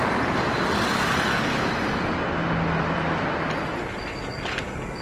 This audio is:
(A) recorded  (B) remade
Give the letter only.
A